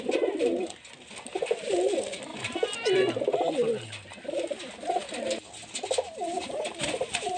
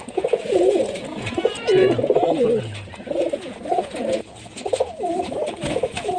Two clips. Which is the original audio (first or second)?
first